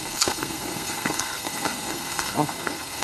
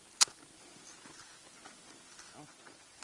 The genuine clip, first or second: second